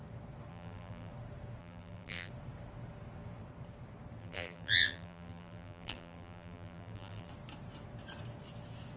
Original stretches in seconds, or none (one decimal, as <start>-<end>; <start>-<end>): 0.0-0.5; 1.1-1.6; 2.3-4.2; 7.3-9.0